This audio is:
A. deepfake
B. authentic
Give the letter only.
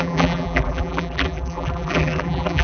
A